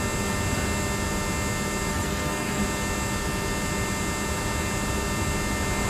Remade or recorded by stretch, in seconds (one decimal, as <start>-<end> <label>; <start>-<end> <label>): 0.0-1.9 recorded; 1.9-2.6 remade; 2.6-5.9 recorded